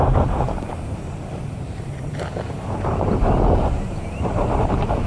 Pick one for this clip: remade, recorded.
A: remade